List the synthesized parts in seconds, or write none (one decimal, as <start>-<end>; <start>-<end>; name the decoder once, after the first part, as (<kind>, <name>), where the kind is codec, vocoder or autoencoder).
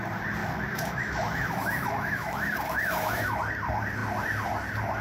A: 0.4-3.4 (autoencoder, DAC-VAE)